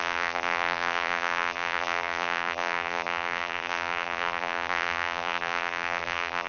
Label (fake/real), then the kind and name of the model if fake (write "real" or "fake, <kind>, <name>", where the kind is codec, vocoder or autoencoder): fake, vocoder, BigVGAN v2